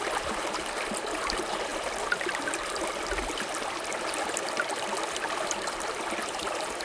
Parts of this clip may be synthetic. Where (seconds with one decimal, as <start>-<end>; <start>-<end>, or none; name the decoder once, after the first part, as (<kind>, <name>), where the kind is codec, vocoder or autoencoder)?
none